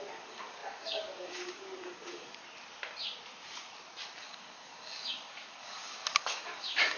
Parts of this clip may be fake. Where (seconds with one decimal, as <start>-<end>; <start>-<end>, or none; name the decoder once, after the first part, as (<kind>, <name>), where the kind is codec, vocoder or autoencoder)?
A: 0.0-2.4 (codec, DAC); 4.2-7.0